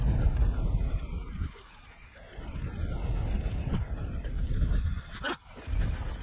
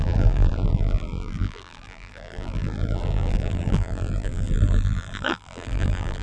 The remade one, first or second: second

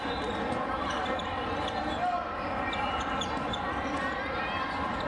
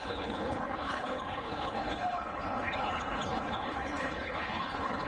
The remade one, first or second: second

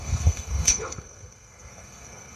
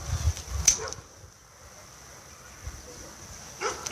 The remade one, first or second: first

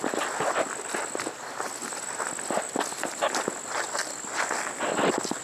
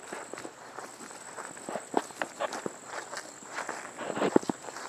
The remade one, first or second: second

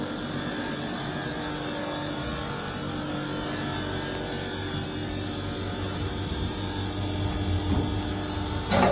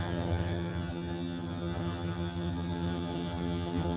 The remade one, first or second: second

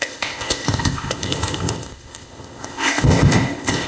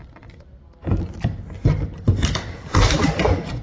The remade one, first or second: first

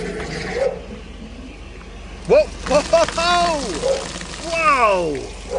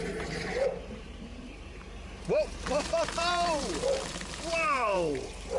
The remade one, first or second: second